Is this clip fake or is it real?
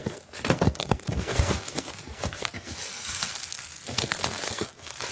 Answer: fake